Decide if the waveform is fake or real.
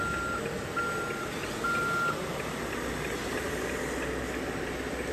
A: real